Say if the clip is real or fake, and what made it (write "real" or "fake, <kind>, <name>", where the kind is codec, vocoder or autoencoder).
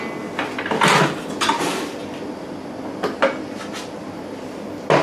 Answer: real